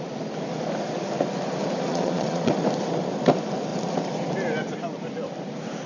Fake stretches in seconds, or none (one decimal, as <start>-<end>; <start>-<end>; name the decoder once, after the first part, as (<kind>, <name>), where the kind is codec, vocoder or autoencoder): 1.9-2.5 (vocoder, Vocos)